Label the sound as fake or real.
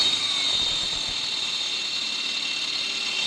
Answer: real